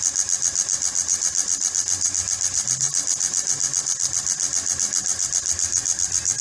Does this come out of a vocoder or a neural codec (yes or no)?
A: no